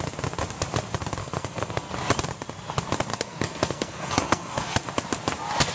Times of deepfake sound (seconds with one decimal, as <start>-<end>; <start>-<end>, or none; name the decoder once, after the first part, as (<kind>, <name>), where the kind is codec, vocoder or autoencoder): 1.2-1.9 (codec, SNAC); 3.1-4.8